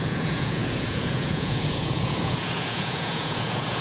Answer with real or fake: fake